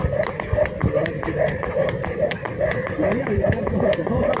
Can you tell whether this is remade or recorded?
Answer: remade